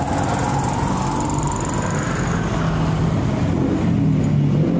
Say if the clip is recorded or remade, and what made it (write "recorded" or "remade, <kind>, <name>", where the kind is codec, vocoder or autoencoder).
recorded